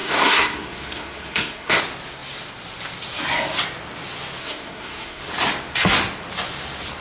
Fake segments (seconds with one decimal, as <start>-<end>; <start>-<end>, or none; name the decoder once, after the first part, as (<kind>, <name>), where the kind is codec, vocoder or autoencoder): 0.0-1.8 (codec, SNAC); 4.4-5.2